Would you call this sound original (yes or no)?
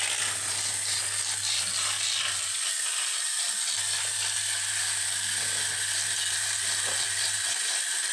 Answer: yes